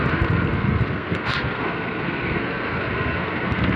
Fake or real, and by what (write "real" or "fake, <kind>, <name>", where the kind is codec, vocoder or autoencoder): fake, codec, SNAC